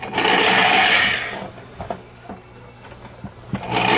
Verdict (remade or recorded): recorded